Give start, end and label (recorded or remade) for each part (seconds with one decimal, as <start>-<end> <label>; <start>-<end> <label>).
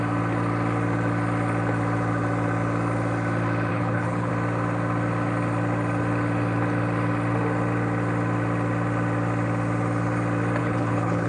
0.0-3.7 recorded; 3.7-4.3 remade; 4.3-10.6 recorded; 10.6-11.3 remade